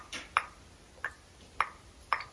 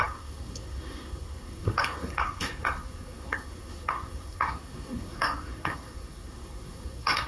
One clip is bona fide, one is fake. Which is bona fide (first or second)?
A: first